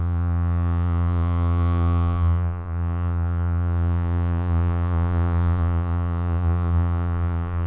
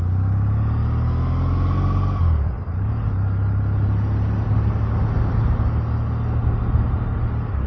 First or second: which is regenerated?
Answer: first